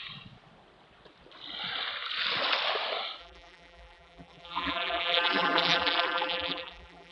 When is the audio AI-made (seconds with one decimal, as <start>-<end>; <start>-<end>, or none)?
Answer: 3.2-7.1